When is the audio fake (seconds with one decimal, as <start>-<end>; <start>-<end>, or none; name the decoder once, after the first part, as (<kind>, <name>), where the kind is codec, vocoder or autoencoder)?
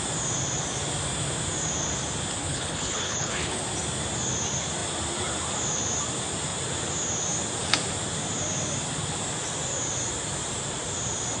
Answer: 2.4-3.6 (codec, HILCodec)